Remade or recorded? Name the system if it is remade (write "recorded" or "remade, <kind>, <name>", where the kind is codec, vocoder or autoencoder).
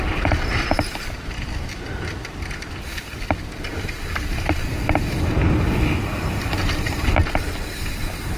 recorded